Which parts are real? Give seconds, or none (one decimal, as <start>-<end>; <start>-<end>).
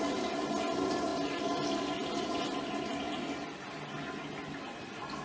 0.0-5.2